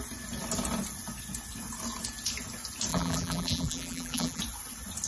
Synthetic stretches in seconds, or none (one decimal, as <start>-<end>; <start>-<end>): 2.9-4.4